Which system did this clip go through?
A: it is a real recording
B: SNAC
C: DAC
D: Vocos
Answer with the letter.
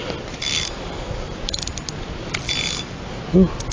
A